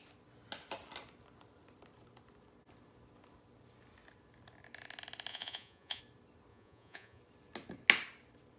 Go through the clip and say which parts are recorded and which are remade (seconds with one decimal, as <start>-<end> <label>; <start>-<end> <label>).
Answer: 0.0-5.3 recorded; 5.3-6.0 remade; 6.0-6.5 recorded; 6.5-7.2 remade; 7.2-8.6 recorded